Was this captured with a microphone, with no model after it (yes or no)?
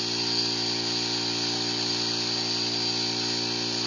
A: yes